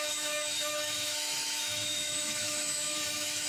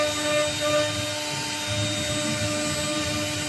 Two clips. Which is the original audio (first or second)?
second